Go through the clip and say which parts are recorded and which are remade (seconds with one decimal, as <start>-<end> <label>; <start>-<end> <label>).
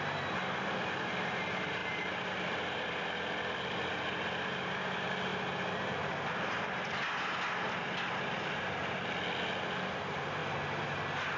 0.0-1.8 recorded; 1.8-3.0 remade; 3.0-5.3 recorded; 5.3-7.0 remade; 7.0-11.4 recorded